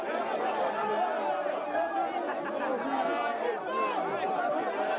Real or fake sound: real